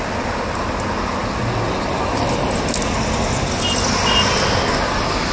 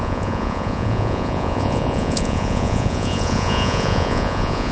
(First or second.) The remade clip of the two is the second